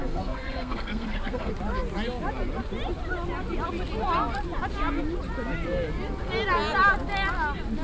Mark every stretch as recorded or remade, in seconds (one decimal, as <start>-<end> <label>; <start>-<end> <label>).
0.0-1.5 remade; 1.5-7.8 recorded